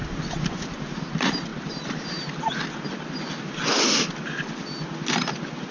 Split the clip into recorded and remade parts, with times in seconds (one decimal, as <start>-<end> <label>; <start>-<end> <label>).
0.0-5.7 recorded